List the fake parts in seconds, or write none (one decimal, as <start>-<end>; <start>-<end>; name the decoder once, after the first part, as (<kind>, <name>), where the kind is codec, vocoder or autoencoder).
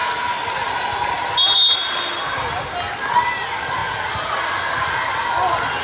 none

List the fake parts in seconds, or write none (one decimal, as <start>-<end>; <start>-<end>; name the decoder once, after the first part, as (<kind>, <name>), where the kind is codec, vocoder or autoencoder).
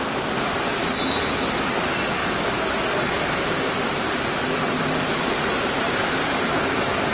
2.2-6.5 (vocoder, BigVGAN v2)